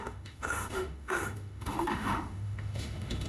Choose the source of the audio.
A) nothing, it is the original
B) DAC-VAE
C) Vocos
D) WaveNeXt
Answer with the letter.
B